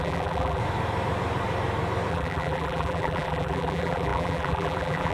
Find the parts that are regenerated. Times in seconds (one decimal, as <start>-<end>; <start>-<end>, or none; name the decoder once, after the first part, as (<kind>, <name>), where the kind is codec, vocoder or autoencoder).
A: 0.0-0.6 (vocoder, BigVGAN v2); 2.1-5.1